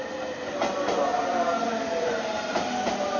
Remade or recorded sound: recorded